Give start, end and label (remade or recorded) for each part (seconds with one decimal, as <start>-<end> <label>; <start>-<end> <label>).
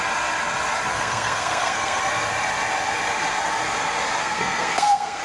0.0-0.9 recorded; 0.9-2.0 remade; 2.0-4.2 recorded; 4.2-5.2 remade